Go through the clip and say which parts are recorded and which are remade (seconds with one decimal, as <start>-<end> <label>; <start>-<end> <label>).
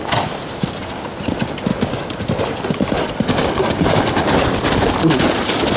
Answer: 0.0-5.8 recorded